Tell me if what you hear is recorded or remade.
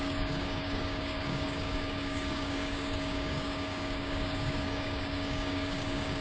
remade